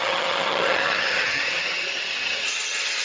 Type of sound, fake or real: fake